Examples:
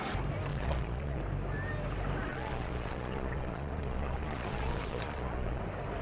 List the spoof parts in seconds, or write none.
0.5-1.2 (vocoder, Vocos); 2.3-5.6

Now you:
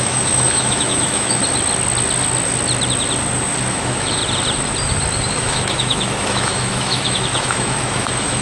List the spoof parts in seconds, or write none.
0.0-1.4 (autoencoder, DAC-VAE); 3.7-4.2; 5.3-8.4

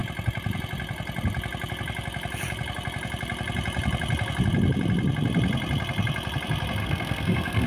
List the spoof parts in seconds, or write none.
6.8-7.7 (codec, SNAC)

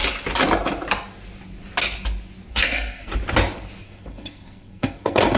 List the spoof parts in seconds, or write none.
2.5-3.1 (codec, SNAC); 3.8-5.4

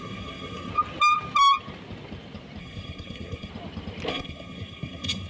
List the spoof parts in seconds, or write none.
0.0-0.7 (codec, SNAC); 2.6-3.5; 4.1-5.3